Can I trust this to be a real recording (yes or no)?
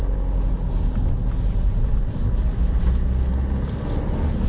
yes